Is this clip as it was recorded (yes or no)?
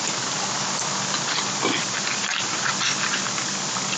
yes